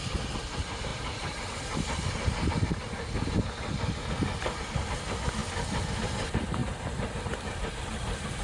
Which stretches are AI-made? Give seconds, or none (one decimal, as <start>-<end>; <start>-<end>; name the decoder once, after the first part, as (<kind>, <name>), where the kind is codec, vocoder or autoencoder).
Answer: 0.9-2.5 (vocoder, BigVGAN v2); 6.6-7.7